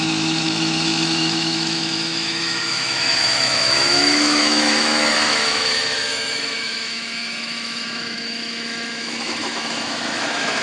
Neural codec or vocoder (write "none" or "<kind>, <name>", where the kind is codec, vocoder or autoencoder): autoencoder, DAC-VAE